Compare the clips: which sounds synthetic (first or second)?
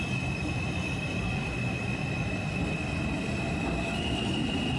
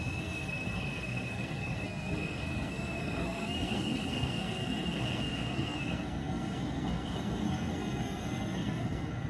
second